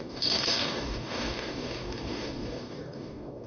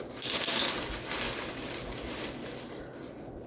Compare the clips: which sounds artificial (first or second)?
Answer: first